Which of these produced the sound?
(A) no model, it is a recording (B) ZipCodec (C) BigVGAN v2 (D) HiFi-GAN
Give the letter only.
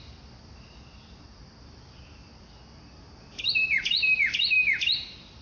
A